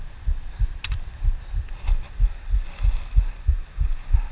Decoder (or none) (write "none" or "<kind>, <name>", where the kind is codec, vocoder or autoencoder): none